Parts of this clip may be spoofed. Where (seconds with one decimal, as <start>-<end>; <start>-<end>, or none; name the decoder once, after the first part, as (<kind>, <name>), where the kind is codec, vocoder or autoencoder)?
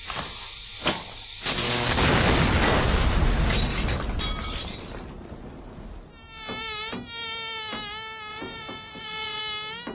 8.3-9.4 (vocoder, Vocos)